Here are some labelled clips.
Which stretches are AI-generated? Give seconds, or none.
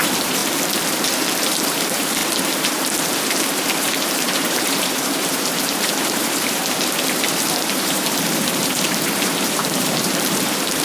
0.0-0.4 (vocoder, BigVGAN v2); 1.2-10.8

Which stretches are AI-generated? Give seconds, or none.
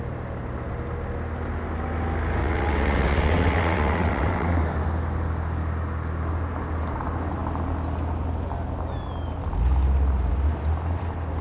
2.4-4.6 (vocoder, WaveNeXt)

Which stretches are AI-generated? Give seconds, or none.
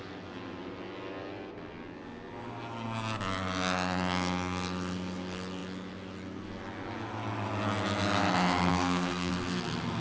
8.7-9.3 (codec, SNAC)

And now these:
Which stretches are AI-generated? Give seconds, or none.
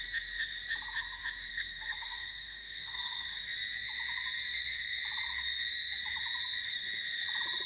1.5-3.4 (codec, SNAC)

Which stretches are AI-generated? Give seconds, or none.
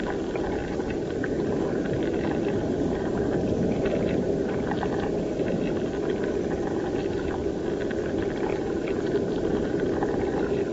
0.6-5.6 (vocoder, BigVGAN v2); 8.5-9.7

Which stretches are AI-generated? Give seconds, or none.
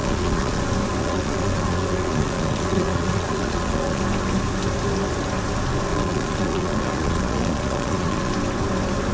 0.0-0.6 (vocoder, Vocos); 1.0-4.0; 5.9-8.3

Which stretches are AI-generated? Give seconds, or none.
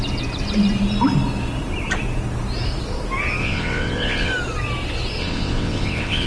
3.4-4.3 (vocoder, WaveNeXt); 5.2-6.3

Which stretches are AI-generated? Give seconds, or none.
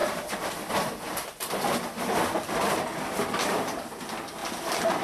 none